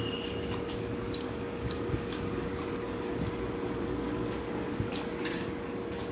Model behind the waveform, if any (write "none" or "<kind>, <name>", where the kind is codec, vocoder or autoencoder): codec, DAC